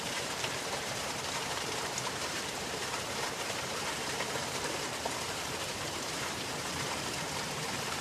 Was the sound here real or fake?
fake